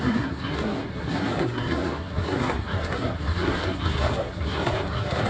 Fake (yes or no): yes